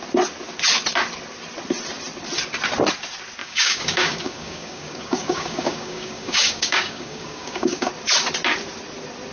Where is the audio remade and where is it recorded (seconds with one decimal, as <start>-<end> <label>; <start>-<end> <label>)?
0.0-3.4 recorded; 3.4-7.9 remade; 7.9-9.3 recorded